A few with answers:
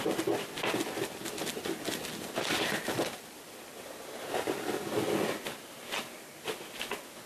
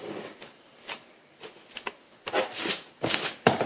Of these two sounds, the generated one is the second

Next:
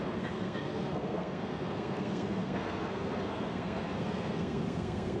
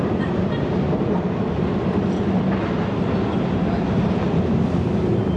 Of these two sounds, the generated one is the first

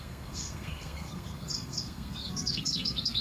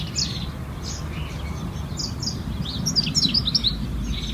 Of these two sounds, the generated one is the first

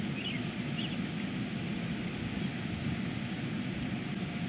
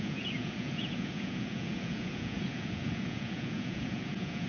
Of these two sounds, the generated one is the second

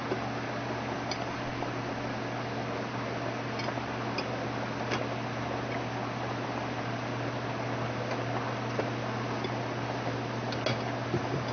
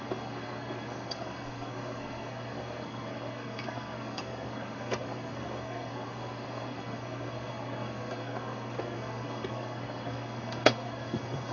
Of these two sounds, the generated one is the second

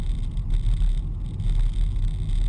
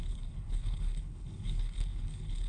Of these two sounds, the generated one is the second